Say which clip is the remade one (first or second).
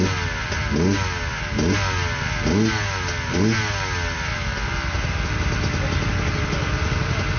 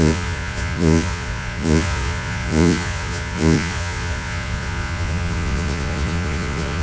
second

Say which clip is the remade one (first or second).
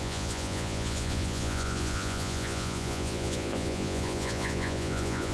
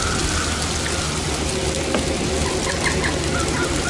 first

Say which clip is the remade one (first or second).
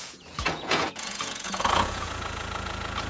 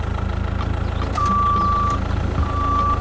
first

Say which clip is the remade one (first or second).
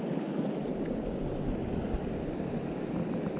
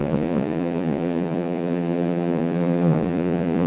second